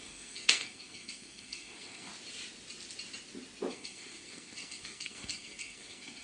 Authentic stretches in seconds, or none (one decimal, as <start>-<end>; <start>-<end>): 2.1-3.7